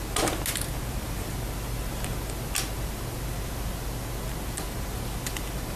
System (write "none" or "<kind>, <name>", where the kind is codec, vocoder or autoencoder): none